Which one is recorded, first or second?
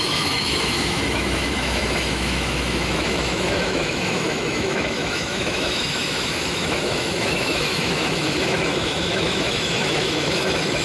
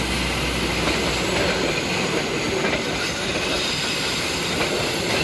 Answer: second